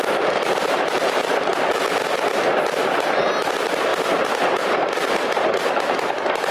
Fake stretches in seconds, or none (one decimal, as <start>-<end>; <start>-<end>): 0.6-1.5; 3.9-5.7